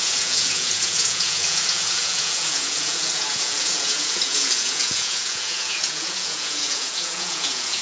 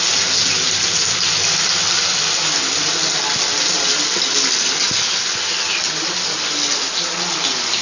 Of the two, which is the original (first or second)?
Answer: second